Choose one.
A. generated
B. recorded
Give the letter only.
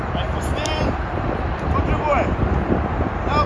B